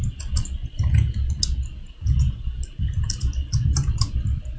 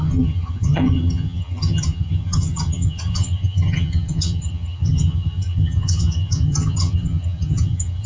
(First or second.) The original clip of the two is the first